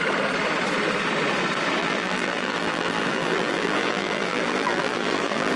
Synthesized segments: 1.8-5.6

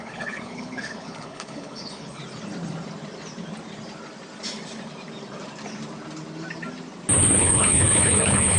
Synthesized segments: 0.0-2.2; 7.4-8.6

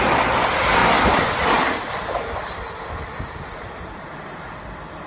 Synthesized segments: 0.8-3.9

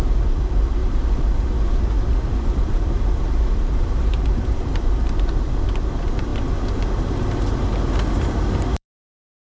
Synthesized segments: 0.0-0.8; 2.1-6.3; 7.6-9.5

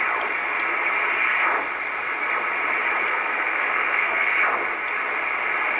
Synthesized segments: 3.1-4.3

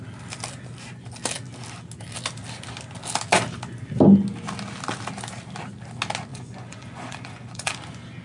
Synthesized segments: 6.3-7.7

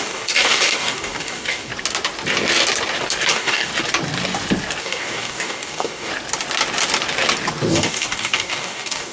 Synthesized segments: 0.0-1.7; 3.3-3.7; 4.8-6.1; 7.7-9.1